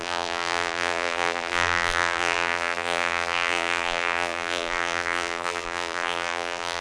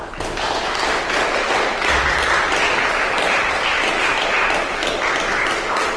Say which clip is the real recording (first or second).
second